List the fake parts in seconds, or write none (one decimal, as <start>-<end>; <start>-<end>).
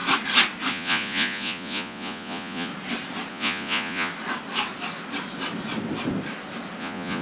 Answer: 0.7-2.7; 3.3-4.1; 6.8-7.2